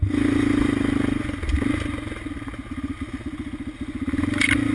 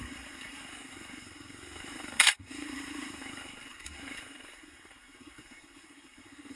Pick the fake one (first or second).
second